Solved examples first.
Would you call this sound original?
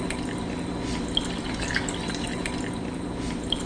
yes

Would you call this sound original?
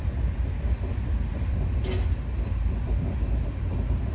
yes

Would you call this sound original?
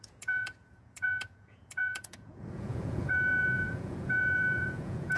no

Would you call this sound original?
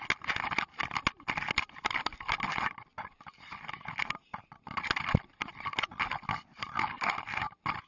yes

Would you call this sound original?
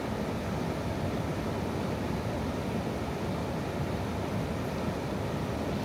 yes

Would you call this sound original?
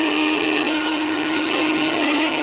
no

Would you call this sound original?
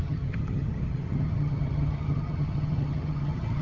no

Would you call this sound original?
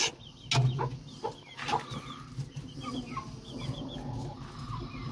yes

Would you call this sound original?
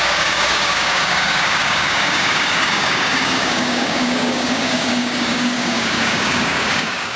no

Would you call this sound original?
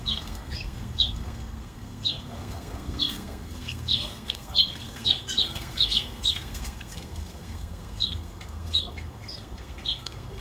no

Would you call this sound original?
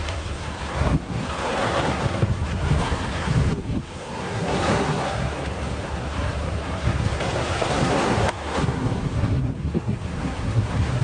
no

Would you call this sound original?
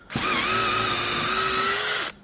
yes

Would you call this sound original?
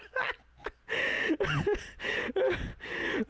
yes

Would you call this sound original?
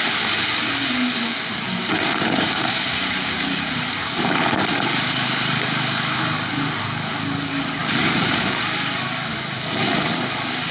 no